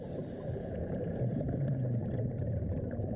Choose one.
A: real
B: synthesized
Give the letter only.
B